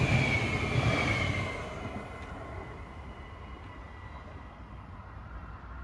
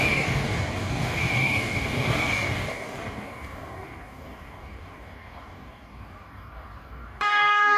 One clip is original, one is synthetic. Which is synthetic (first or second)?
second